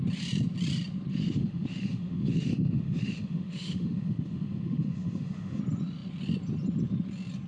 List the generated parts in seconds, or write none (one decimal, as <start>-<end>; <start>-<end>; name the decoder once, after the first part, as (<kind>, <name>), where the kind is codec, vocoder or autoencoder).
1.1-5.6 (autoencoder, DAC-VAE)